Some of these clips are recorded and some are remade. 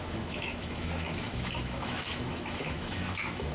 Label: remade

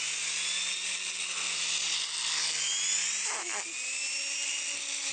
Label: recorded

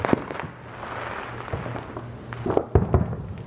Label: recorded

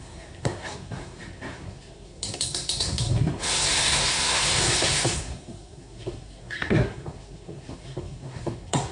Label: remade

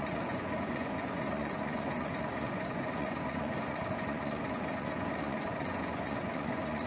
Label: remade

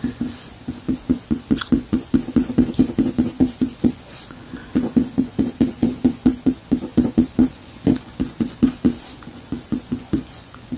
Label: remade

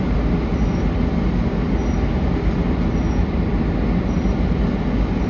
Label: recorded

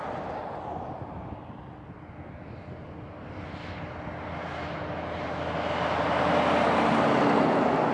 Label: recorded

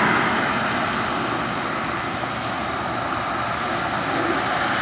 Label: recorded